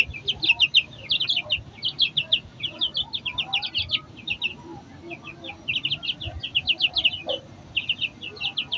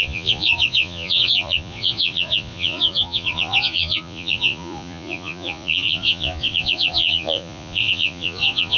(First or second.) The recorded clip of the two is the first